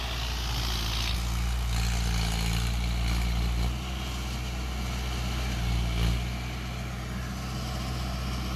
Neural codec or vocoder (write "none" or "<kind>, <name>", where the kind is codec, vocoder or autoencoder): none